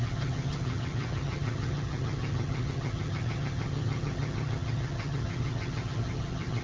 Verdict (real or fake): fake